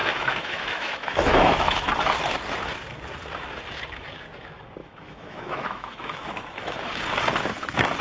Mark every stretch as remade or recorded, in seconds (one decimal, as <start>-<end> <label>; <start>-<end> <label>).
0.0-1.9 remade; 1.9-4.8 recorded; 4.8-6.9 remade; 6.9-8.0 recorded